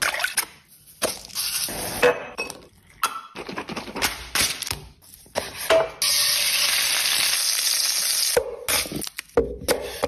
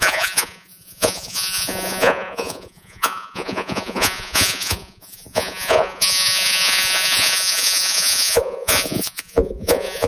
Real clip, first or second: first